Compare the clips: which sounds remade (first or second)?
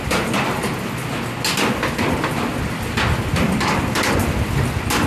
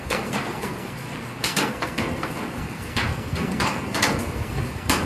second